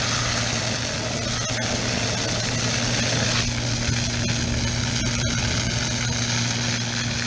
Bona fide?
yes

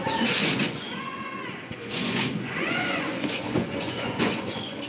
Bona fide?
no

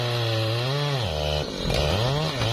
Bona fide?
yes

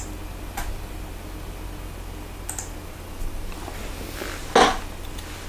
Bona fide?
yes